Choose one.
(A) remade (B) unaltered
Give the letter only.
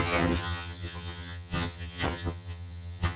A